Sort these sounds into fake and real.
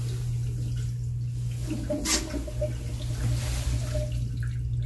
real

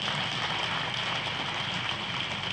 real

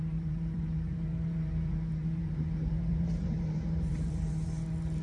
fake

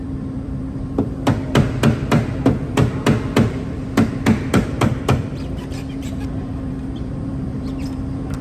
fake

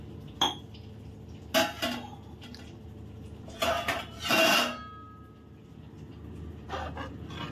real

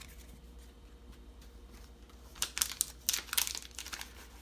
real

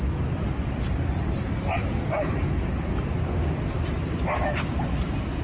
real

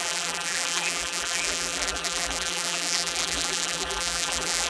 fake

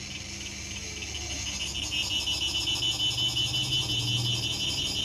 real